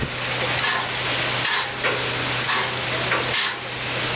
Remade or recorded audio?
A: recorded